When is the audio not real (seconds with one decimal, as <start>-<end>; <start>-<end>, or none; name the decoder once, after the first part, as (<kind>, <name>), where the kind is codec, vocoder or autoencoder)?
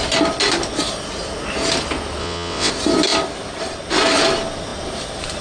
2.2-2.7 (vocoder, WaveNeXt)